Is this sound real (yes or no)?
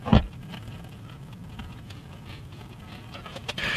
no